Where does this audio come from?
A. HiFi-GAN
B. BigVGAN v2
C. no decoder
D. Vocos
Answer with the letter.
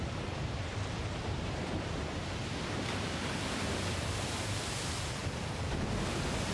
B